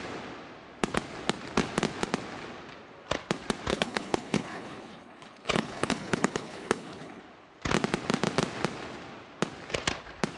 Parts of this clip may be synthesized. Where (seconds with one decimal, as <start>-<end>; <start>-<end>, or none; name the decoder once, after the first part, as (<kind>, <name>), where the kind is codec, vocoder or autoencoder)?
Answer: 3.7-7.2 (codec, HILCodec)